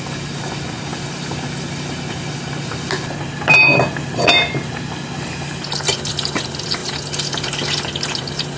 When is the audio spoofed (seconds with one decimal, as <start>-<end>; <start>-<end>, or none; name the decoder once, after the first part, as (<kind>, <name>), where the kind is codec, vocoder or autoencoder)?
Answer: none